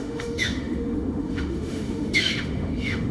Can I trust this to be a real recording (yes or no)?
no